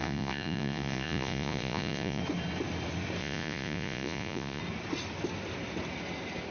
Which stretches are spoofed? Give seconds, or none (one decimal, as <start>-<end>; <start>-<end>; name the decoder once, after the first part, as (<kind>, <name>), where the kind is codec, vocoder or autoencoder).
0.0-2.2 (vocoder, Vocos); 3.2-4.6